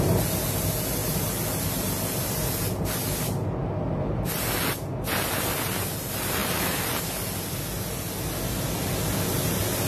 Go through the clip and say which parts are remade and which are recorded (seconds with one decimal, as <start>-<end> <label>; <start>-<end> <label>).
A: 0.0-9.9 recorded